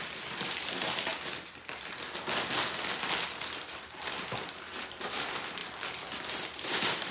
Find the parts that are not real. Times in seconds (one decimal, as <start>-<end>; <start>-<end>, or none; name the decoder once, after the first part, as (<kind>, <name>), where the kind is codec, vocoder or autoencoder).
0.0-1.1 (vocoder, BigVGAN v2); 3.2-5.6; 6.3-7.1